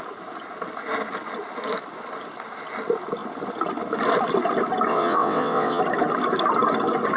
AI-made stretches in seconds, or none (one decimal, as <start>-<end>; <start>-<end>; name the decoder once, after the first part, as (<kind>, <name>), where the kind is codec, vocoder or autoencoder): 4.9-5.8 (vocoder, WaveNeXt)